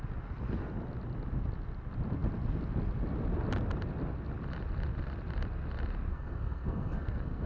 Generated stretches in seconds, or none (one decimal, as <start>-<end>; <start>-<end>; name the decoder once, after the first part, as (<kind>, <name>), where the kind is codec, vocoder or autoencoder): 6.1-7.5 (codec, SNAC)